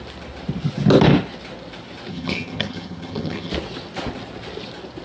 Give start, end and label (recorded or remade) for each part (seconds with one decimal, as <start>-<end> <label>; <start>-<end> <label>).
0.0-2.1 recorded; 2.1-3.5 remade; 3.5-5.0 recorded